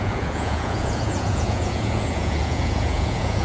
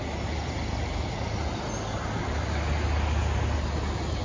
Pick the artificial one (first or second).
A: first